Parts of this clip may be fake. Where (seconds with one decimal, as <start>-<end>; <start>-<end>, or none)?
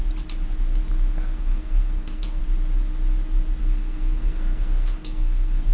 1.1-2.4; 3.6-5.7